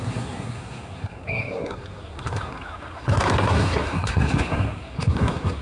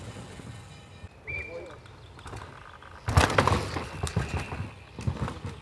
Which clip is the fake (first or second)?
first